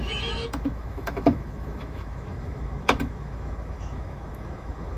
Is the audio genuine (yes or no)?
no